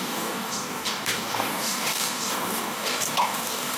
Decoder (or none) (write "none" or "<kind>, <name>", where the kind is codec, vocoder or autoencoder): codec, DAC